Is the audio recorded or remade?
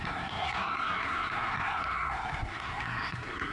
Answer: remade